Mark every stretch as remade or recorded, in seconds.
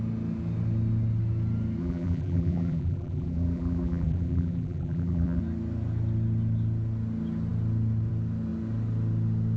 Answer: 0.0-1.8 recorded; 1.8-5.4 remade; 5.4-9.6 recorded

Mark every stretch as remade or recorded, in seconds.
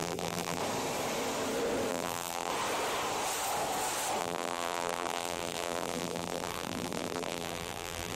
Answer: 0.0-0.6 remade; 0.6-1.9 recorded; 1.9-2.5 remade; 2.5-4.2 recorded; 4.2-8.2 remade